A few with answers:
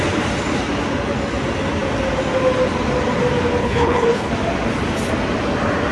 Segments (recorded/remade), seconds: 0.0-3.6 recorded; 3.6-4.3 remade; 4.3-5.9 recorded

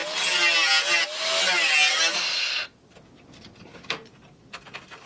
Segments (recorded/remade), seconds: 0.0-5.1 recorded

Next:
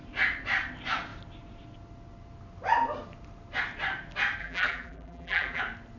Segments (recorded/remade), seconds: 0.0-4.4 recorded; 4.4-5.6 remade; 5.6-6.0 recorded

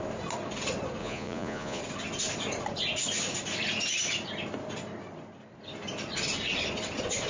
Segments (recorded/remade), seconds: 0.0-1.0 recorded; 1.0-1.8 remade; 1.8-7.3 recorded

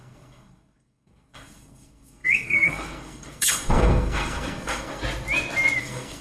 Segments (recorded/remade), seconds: 0.0-5.0 remade; 5.0-5.8 recorded; 5.8-6.2 remade